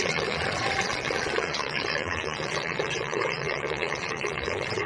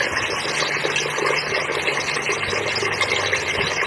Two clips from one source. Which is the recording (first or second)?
second